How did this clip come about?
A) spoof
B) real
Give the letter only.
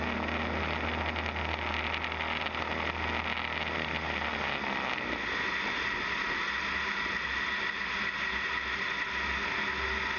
B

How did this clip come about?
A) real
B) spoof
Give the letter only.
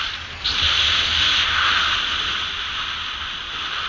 A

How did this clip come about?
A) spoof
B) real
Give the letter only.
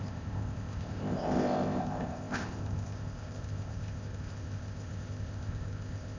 A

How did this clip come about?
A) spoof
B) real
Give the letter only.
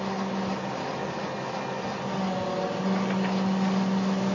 B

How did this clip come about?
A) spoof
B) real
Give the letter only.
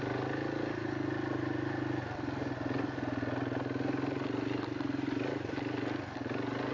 B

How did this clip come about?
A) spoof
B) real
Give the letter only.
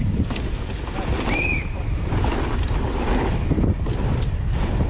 B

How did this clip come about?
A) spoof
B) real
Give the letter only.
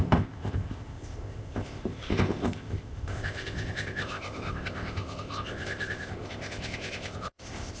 A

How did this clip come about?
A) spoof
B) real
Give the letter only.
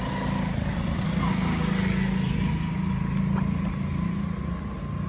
B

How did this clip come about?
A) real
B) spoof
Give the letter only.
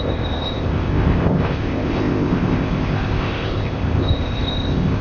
B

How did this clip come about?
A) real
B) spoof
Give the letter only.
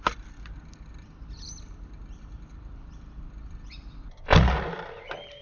A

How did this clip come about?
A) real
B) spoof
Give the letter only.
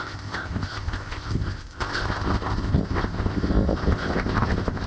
B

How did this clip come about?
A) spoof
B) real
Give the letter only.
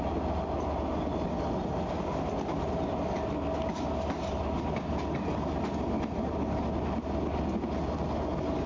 B